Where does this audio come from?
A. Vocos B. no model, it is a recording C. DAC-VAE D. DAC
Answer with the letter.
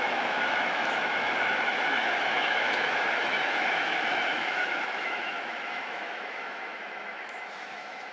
C